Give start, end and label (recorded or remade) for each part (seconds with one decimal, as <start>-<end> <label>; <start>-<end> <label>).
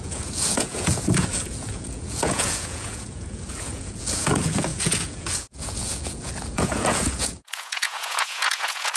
0.0-9.0 remade